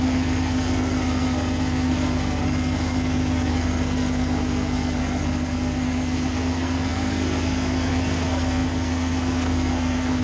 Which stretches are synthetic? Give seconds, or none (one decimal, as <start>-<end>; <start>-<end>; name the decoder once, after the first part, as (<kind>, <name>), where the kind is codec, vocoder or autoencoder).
0.0-10.2 (codec, SNAC)